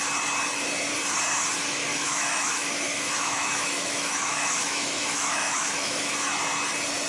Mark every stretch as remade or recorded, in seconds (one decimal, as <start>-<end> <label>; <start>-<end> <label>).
0.0-1.9 recorded; 1.9-6.1 remade; 6.1-7.1 recorded